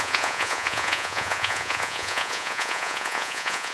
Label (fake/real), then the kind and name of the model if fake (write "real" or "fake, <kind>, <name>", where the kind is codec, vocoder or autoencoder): fake, vocoder, Vocos